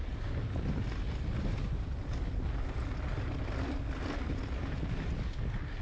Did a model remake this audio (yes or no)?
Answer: no